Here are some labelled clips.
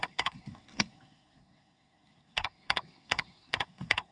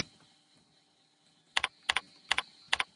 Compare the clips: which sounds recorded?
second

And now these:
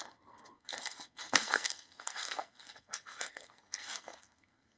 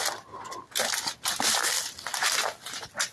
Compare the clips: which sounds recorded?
second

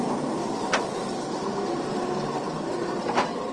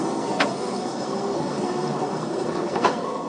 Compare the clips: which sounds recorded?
first